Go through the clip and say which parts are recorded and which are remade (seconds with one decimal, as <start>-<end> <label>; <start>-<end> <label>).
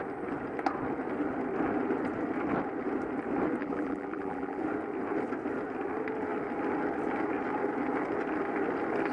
0.0-3.6 recorded; 3.6-4.6 remade; 4.6-9.1 recorded